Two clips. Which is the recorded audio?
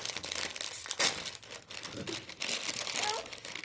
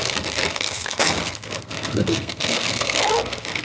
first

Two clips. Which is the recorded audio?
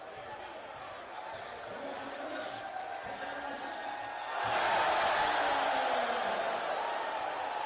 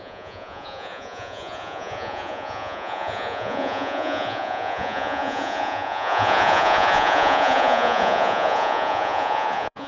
first